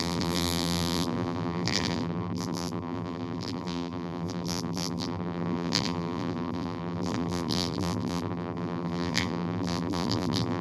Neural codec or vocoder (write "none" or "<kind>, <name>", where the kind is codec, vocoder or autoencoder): vocoder, BigVGAN v2